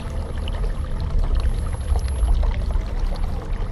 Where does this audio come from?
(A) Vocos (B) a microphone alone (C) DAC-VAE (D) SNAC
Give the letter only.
B